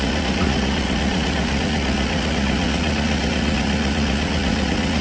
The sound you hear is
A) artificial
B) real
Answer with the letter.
A